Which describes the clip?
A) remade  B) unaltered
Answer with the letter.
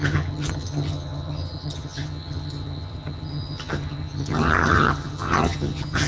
A